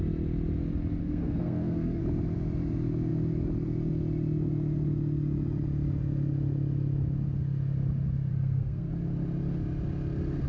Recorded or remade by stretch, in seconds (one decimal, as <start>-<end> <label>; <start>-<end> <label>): 0.0-1.0 recorded; 1.0-2.0 remade; 2.0-8.3 recorded; 8.3-8.9 remade; 8.9-10.5 recorded